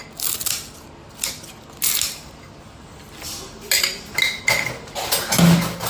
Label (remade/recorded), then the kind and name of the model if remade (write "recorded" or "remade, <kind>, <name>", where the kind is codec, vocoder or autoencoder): recorded